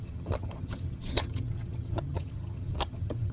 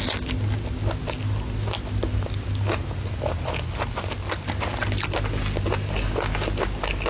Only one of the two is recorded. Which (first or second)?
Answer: second